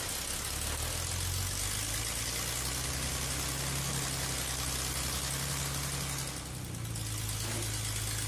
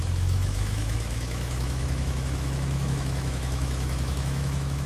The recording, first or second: first